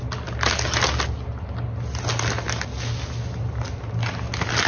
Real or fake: real